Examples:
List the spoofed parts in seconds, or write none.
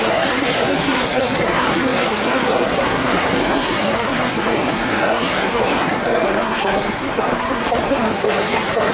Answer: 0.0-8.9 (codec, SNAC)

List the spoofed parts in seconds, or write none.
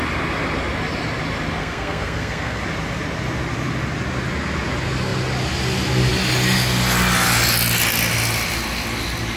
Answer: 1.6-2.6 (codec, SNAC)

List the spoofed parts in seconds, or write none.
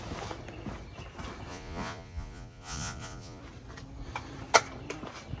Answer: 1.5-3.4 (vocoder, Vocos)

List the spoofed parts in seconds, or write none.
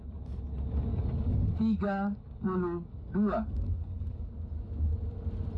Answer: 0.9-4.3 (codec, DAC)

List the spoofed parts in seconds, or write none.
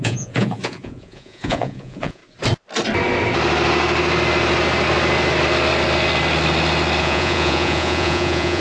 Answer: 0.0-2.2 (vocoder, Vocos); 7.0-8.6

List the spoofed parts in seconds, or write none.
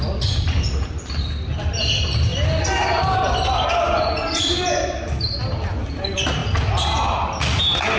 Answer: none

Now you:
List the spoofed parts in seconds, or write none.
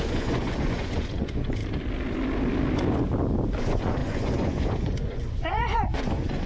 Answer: 0.0-1.6 (vocoder, Vocos); 3.6-6.5